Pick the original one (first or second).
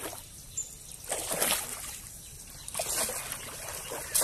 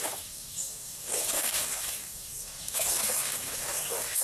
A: first